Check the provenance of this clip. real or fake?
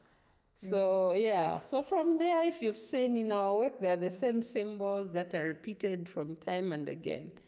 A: fake